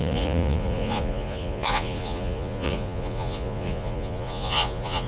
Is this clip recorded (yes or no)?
no